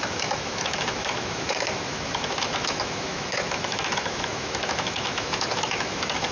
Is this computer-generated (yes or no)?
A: yes